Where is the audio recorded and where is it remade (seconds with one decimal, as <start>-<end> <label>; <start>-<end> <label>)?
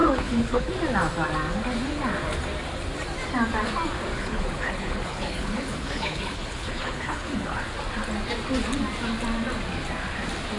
0.0-0.7 remade; 0.7-4.1 recorded; 4.1-7.6 remade; 7.6-10.6 recorded